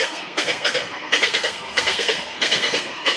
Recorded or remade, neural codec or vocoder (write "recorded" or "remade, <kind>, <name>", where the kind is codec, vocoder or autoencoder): remade, codec, SNAC